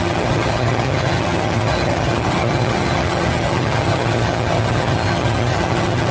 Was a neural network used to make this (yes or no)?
yes